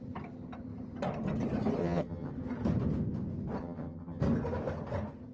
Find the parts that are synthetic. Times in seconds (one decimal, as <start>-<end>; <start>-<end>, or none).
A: 1.8-2.3; 3.6-4.2